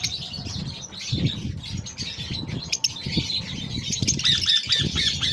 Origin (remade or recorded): recorded